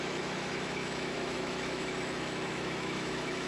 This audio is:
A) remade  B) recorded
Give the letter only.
A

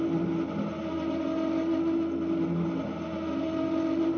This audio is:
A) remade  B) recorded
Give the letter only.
B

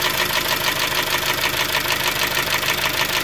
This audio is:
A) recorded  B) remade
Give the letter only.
A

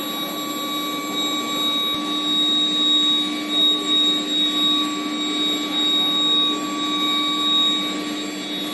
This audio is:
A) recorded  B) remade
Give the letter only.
A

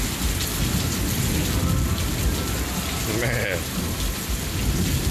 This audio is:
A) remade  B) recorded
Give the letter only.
B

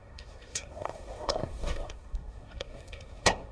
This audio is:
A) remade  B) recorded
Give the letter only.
A